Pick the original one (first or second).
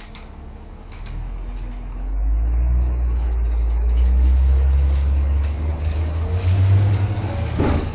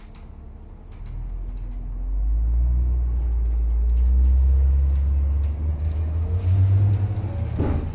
second